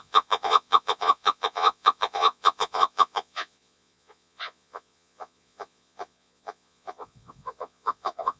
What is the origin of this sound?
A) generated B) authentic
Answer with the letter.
A